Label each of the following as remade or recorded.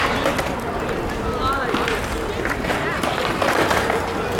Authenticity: remade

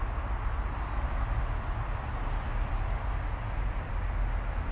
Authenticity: recorded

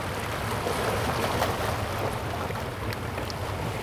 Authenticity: recorded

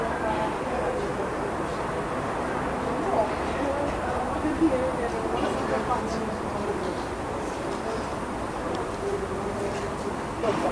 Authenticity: recorded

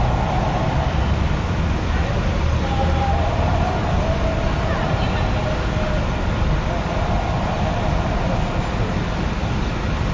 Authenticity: recorded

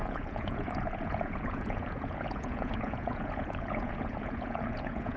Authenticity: remade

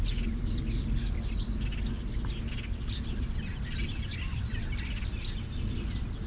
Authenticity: recorded